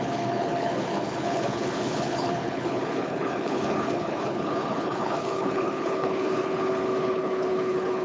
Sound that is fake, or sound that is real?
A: fake